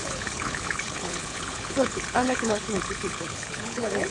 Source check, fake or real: fake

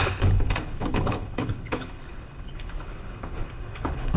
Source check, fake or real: fake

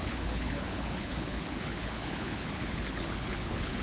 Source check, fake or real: fake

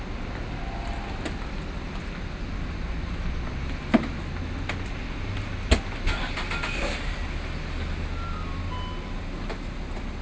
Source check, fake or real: real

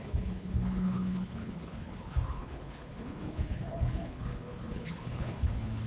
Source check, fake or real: fake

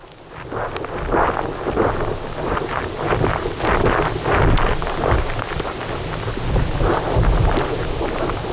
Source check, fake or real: real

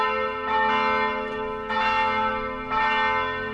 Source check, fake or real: real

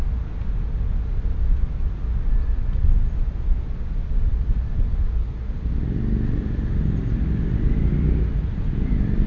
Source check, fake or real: real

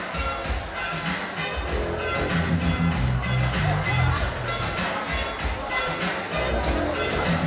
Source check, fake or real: real